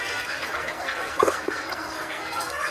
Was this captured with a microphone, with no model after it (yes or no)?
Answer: no